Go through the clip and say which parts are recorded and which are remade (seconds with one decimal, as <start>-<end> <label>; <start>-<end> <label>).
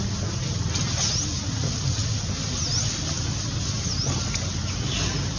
0.0-5.4 recorded